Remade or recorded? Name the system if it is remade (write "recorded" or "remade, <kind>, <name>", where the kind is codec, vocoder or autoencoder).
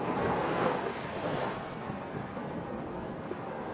remade, codec, SNAC